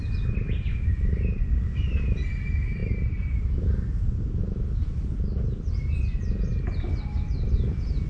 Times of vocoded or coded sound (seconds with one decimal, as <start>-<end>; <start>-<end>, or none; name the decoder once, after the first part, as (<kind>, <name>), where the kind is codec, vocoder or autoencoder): none